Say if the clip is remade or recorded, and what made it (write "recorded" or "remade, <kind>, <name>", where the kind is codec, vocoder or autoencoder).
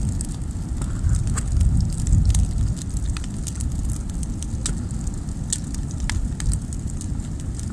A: recorded